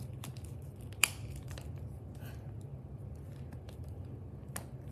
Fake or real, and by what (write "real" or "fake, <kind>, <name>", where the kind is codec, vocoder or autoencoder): real